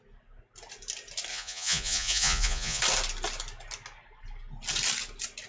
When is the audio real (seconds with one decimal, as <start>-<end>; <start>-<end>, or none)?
0.0-1.3; 2.8-5.5